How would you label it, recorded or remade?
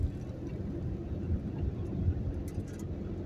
recorded